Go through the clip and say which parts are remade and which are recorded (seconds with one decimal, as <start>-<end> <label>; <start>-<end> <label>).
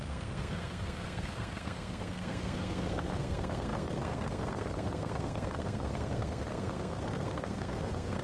0.0-8.2 remade